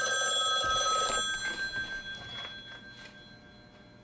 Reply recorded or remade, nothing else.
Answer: recorded